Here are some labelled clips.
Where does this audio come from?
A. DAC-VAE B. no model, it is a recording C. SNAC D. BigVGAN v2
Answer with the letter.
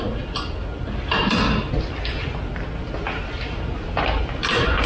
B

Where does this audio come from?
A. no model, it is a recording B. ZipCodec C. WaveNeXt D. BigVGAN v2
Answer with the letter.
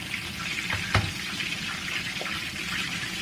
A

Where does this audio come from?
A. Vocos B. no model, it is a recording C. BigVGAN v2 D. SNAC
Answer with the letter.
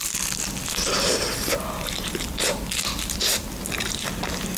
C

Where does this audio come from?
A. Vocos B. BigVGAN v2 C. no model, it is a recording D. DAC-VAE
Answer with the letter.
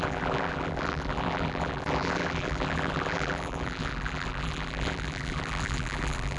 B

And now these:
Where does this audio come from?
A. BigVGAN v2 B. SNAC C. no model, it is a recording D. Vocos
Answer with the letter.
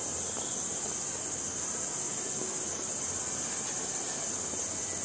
A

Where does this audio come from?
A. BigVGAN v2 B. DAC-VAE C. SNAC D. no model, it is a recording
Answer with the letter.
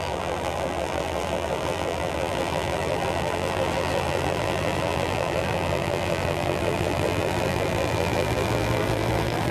A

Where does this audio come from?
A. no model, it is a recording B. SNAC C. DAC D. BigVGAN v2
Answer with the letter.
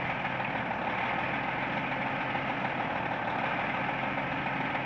A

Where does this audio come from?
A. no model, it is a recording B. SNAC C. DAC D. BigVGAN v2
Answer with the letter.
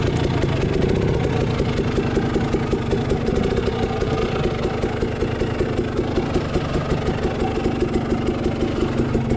A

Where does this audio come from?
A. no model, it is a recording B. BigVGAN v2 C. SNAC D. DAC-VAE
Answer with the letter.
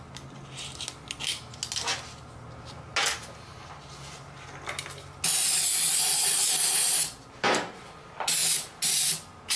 A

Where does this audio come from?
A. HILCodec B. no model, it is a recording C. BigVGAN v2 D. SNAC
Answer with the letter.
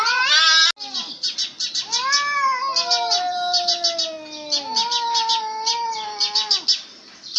B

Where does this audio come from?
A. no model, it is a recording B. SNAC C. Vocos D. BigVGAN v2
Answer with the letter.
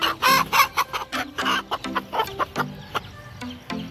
A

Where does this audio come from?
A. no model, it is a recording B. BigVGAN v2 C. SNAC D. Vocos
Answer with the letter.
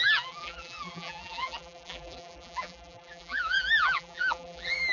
B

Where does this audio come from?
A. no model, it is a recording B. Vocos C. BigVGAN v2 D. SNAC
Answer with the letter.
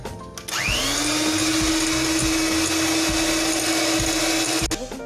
A